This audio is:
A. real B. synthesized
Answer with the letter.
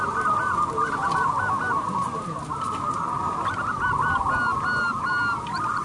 A